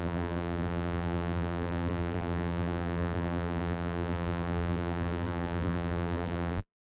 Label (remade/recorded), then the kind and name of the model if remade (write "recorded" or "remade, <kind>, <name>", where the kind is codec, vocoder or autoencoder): remade, vocoder, BigVGAN v2